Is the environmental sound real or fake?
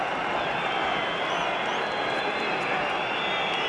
real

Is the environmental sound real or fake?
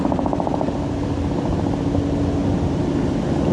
real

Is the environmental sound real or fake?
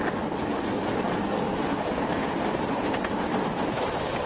real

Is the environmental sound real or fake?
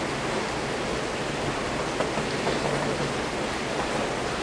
real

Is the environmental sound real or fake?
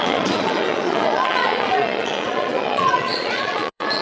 fake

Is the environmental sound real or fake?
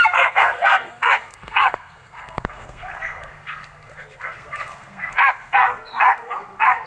fake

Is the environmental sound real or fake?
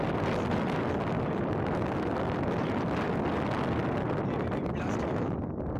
real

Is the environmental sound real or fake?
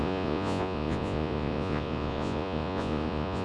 fake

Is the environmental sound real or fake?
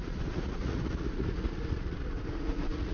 fake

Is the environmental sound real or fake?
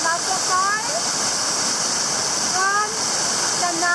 real